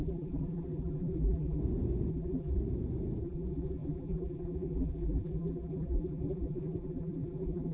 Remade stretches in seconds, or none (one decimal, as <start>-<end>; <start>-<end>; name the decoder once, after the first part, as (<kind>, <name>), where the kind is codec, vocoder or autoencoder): 0.0-1.6 (vocoder, BigVGAN v2); 2.1-2.6; 3.2-7.7